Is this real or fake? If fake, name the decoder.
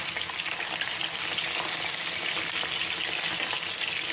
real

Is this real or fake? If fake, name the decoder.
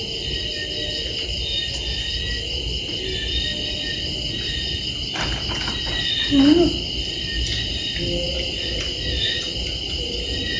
real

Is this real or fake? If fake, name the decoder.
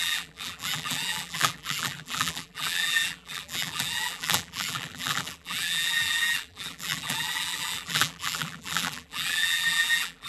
fake, vocoder, BigVGAN v2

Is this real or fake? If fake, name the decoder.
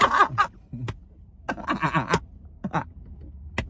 real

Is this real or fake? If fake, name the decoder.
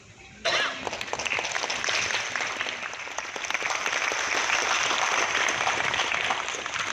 real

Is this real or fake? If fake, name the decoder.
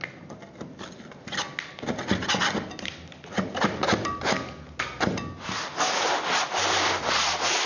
real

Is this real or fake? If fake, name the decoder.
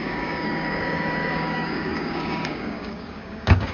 fake, codec, DAC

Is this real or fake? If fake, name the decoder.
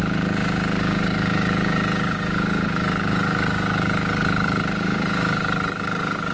fake, codec, DAC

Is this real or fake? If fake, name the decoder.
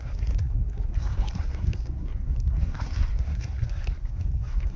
fake, codec, SNAC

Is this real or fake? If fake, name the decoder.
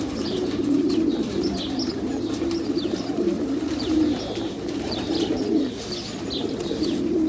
real